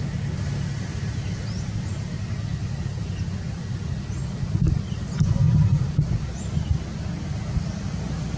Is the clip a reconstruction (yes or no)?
no